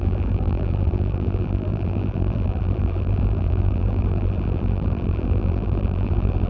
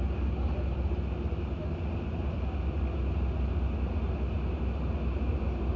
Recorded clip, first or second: second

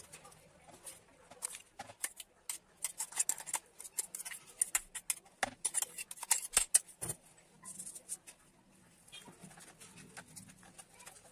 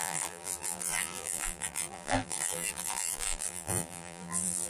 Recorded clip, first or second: first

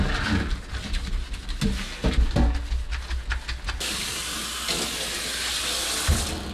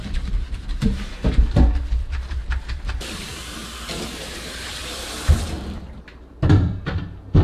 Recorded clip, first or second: first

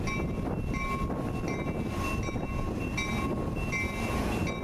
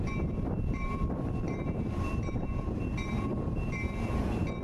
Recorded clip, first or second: first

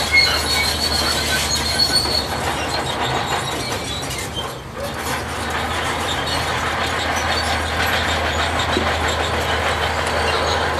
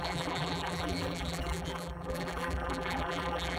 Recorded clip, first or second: first